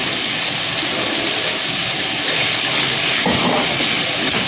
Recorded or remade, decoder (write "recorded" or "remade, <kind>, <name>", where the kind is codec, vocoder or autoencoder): recorded